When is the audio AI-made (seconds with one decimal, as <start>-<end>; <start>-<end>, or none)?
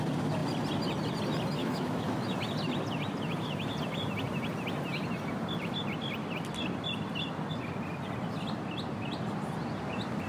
1.6-2.2